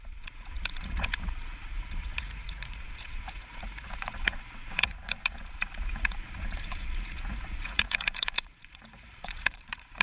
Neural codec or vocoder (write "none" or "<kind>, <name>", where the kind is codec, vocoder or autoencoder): vocoder, Vocos